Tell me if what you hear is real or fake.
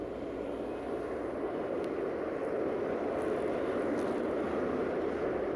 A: real